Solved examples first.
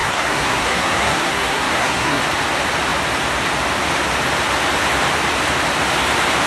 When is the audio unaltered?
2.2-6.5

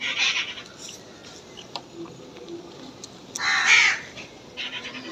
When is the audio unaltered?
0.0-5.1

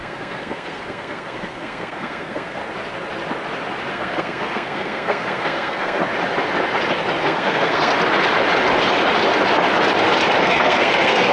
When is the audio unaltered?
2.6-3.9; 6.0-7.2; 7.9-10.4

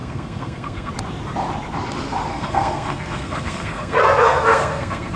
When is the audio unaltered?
0.9-2.3

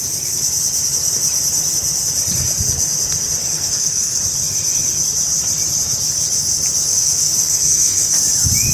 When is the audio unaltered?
0.0-3.4; 4.2-6.9; 8.2-8.7